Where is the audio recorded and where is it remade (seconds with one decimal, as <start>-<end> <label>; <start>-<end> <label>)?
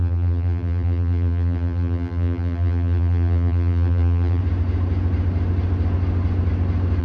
0.0-4.4 remade; 4.4-7.0 recorded